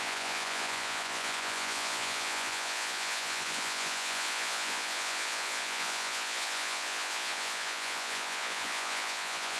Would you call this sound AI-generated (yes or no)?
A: yes